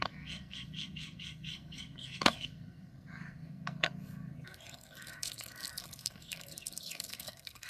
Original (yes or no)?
no